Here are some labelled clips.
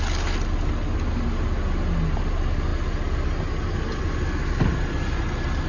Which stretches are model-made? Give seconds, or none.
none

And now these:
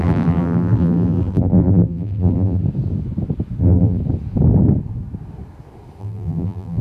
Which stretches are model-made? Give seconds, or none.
0.0-2.6 (vocoder, BigVGAN v2); 3.6-4.0; 6.0-6.8

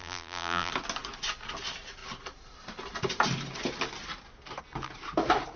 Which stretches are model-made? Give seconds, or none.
0.0-0.7 (vocoder, BigVGAN v2)